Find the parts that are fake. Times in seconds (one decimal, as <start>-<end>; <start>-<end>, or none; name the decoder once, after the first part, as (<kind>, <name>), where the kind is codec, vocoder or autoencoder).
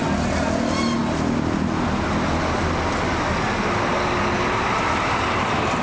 none